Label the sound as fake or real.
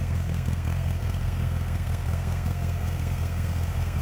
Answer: fake